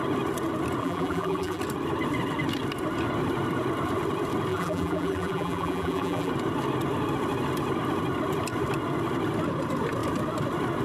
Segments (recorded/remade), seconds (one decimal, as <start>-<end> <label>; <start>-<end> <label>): 0.0-0.8 recorded; 0.8-1.6 remade; 1.6-4.5 recorded; 4.5-6.3 remade; 6.3-10.8 recorded